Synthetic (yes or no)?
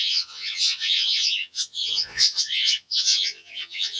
yes